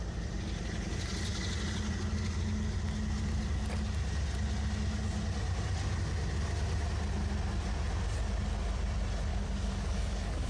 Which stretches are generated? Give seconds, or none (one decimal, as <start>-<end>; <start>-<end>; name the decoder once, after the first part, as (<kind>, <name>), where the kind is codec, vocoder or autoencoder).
9.3-10.5 (codec, DAC)